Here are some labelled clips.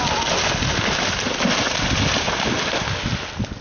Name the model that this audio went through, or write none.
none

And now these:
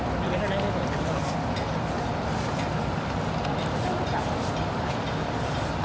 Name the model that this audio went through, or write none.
none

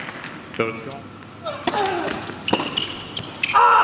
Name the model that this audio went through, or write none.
none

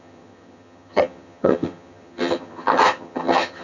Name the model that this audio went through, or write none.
vocoder, HiFi-GAN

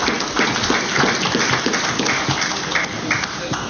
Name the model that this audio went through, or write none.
none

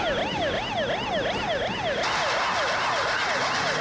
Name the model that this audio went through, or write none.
none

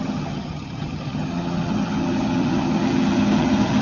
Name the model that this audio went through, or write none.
vocoder, HiFi-GAN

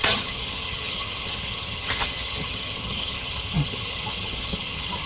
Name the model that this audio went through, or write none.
vocoder, HiFi-GAN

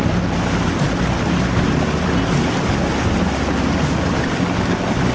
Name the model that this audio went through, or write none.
none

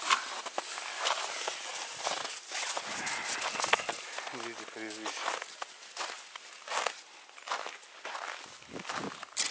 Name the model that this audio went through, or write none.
none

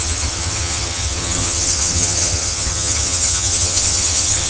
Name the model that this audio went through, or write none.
vocoder, HiFi-GAN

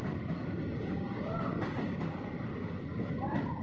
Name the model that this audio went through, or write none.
none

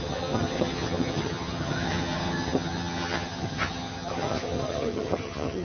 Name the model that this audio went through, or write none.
vocoder, HiFi-GAN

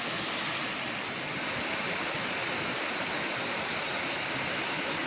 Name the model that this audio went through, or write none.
none